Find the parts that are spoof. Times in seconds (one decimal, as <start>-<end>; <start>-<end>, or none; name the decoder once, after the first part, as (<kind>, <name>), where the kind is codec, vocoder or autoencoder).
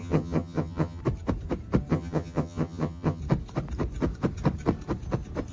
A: 0.0-1.0 (vocoder, HiFi-GAN); 1.9-3.2